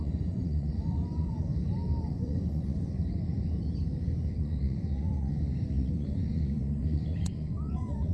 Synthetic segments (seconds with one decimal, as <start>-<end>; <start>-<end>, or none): 0.0-1.5; 2.1-2.9; 4.4-8.1